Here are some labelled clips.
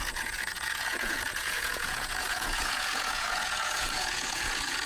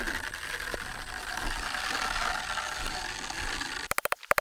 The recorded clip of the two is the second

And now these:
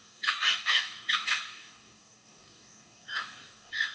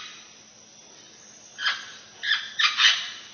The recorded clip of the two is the second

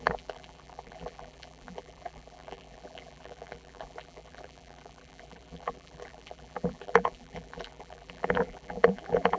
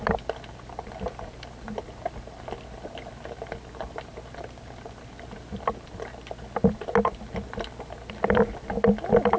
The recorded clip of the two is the second